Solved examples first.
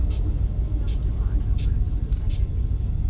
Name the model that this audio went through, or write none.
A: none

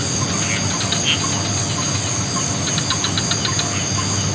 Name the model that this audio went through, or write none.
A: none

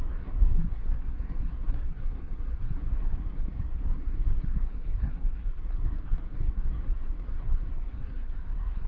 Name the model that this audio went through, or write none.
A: codec, SNAC